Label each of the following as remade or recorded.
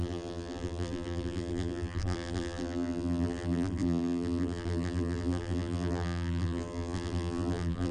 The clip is remade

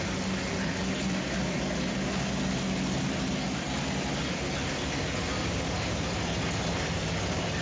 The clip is recorded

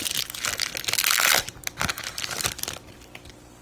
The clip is recorded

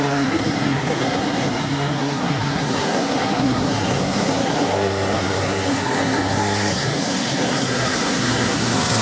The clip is remade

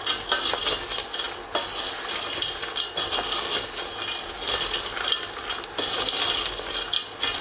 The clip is recorded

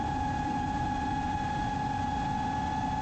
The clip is recorded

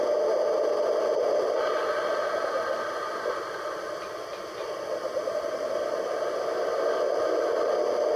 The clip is recorded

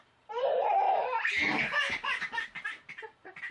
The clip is remade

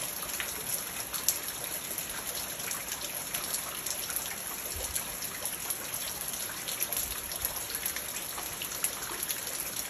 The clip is recorded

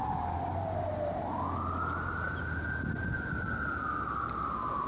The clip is recorded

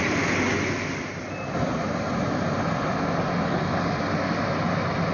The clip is recorded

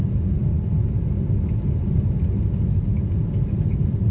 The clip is recorded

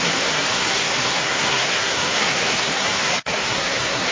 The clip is remade